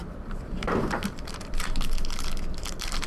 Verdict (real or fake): real